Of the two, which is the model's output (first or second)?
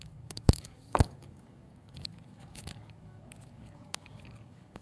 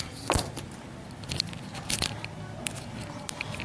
first